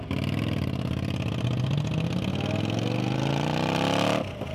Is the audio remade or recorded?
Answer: recorded